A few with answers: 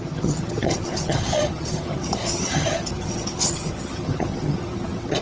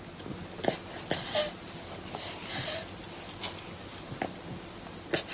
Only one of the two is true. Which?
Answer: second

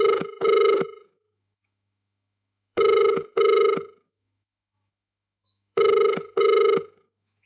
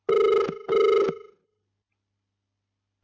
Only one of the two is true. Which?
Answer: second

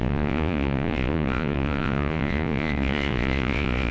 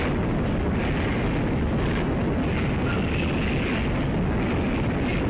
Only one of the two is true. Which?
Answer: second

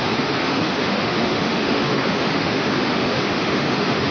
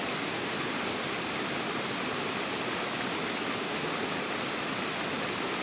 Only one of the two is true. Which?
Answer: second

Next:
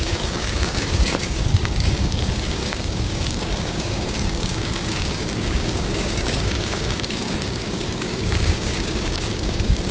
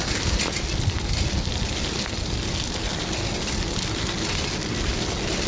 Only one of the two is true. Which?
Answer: second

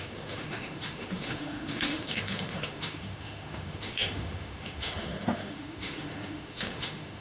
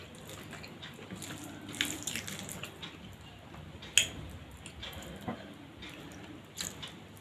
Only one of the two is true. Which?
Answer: second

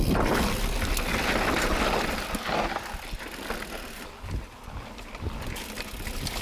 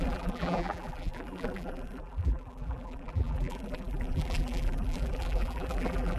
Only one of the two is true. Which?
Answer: first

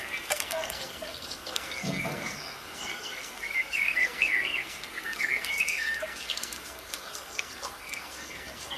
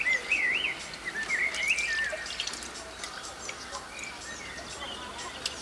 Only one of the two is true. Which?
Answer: second